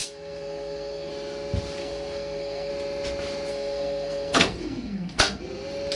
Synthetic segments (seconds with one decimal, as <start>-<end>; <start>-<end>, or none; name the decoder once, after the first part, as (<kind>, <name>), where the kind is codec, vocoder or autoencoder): 0.0-1.1 (codec, SNAC); 1.8-2.7; 3.5-5.4